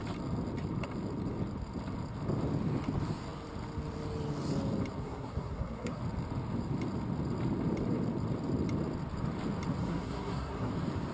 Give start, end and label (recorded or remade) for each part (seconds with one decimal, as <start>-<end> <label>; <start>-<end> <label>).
0.0-5.0 recorded; 5.0-6.0 remade; 6.0-9.8 recorded; 9.8-10.7 remade; 10.7-11.1 recorded